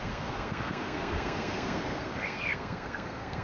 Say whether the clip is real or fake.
fake